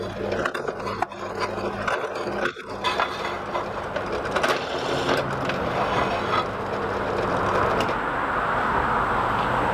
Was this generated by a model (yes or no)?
no